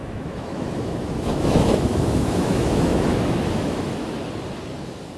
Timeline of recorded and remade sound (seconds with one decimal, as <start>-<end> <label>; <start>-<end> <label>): 0.0-4.2 remade; 4.2-5.2 recorded